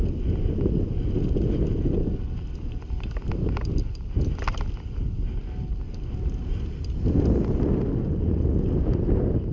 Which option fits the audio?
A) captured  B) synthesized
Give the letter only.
A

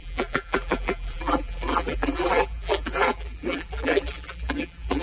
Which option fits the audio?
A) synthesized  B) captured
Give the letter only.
A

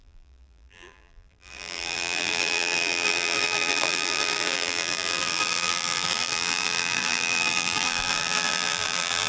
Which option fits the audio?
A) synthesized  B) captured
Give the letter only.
A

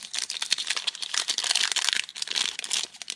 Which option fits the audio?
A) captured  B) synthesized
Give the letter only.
B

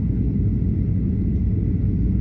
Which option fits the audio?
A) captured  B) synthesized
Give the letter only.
A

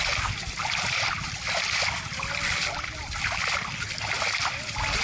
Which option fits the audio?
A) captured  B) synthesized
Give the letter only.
A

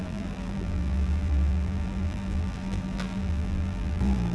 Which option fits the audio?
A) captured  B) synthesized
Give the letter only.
B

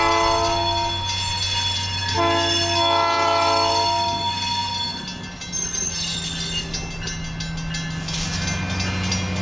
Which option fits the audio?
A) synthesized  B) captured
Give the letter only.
B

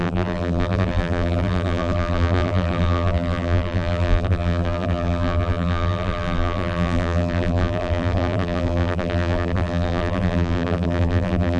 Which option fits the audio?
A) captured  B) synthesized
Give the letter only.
B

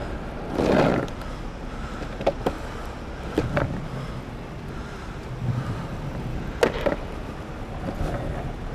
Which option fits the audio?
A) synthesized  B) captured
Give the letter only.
B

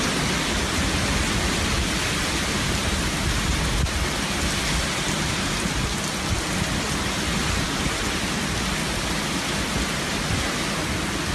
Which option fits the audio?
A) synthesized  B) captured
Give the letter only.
B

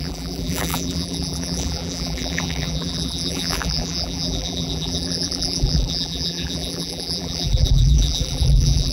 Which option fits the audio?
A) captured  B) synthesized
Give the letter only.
B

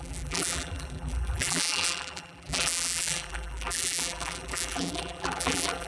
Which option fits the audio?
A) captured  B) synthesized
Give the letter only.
B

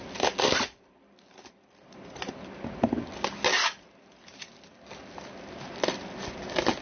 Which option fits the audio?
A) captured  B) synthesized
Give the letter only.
A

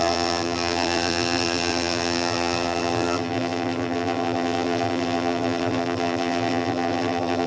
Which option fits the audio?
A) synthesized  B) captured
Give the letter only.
A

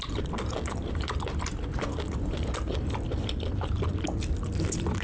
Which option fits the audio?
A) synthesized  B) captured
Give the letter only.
A